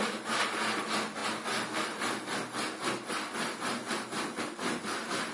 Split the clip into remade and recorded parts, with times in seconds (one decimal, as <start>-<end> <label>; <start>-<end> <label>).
0.0-5.3 recorded

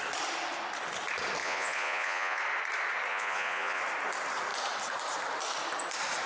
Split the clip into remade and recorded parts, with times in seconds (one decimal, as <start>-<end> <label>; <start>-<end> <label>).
0.0-1.4 recorded; 1.4-2.4 remade; 2.4-3.1 recorded; 3.1-3.8 remade; 3.8-6.3 recorded